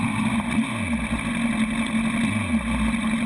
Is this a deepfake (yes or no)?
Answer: no